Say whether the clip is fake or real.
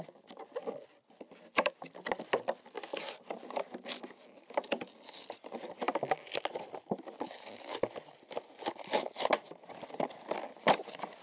real